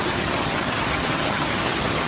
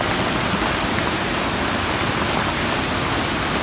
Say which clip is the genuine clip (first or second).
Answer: second